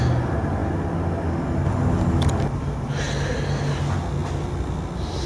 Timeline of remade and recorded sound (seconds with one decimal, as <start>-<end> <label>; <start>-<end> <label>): 0.0-5.3 recorded